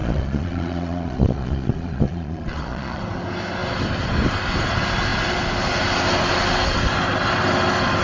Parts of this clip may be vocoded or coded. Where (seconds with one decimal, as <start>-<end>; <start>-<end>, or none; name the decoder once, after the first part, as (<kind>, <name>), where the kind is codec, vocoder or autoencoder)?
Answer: 0.0-3.0 (vocoder, Vocos)